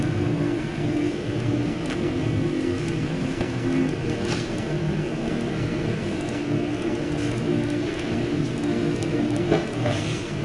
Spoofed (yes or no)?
yes